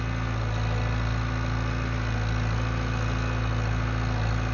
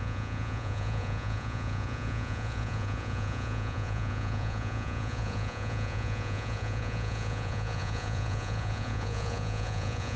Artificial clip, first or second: second